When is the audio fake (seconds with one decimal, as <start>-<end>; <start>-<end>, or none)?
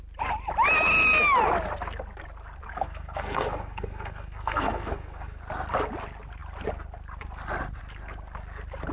2.8-5.4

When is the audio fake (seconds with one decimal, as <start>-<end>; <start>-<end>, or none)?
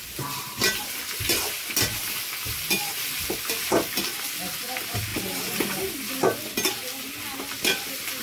none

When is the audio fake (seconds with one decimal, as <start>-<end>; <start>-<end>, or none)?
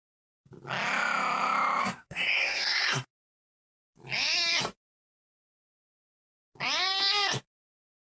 1.8-3.1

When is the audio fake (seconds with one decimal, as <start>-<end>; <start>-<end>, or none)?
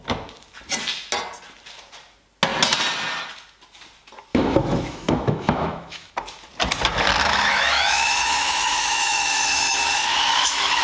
4.3-6.1; 7.2-10.8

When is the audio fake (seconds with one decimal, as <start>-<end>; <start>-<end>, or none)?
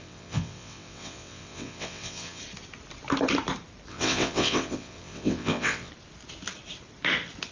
0.0-2.4; 3.9-5.9